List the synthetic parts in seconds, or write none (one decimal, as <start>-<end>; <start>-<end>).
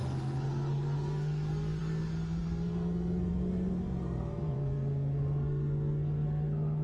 0.0-6.8